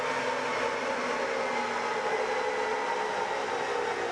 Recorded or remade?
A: recorded